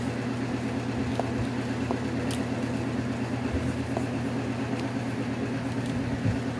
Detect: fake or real real